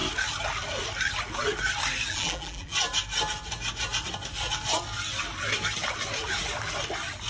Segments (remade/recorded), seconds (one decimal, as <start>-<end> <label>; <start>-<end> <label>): 0.0-2.1 recorded; 2.1-2.7 remade; 2.7-7.3 recorded